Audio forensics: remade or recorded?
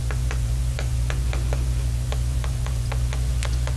remade